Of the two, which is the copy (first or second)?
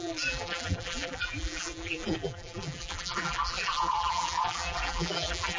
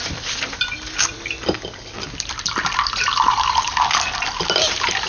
first